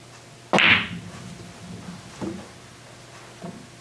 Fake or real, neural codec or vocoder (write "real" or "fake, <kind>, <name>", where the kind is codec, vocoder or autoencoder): real